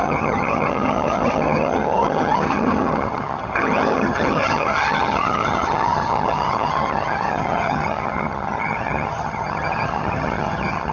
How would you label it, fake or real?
fake